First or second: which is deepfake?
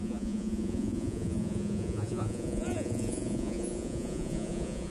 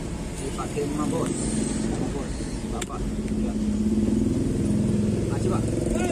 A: first